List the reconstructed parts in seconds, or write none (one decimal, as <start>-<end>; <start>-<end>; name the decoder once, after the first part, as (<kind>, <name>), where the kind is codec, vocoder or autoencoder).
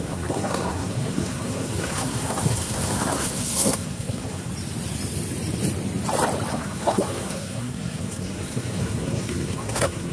0.0-4.5 (codec, SNAC); 6.5-10.1